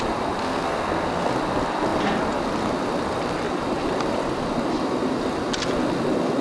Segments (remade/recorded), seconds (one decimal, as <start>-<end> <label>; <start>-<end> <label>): 0.0-0.4 recorded; 0.4-1.3 remade; 1.3-6.4 recorded